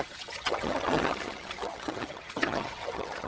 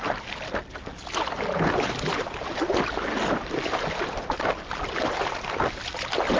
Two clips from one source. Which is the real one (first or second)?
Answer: second